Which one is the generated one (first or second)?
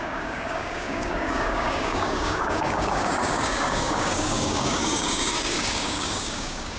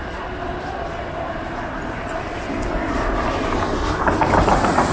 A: first